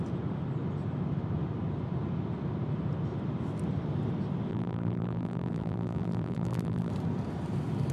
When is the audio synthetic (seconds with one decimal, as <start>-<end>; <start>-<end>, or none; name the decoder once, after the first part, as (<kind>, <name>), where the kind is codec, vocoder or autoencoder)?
4.5-6.9 (vocoder, BigVGAN v2)